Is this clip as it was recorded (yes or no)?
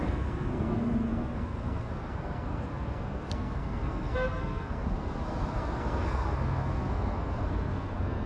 no